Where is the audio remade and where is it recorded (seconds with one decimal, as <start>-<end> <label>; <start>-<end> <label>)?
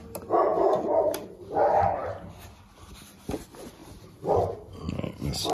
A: 0.0-3.8 recorded; 3.8-4.7 remade; 4.7-5.5 recorded